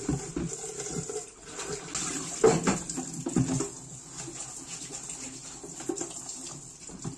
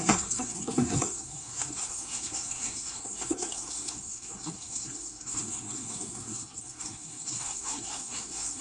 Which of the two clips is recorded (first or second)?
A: first